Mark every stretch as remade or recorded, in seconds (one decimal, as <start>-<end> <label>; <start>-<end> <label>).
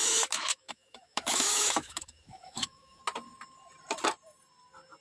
0.0-3.0 remade; 3.0-5.0 recorded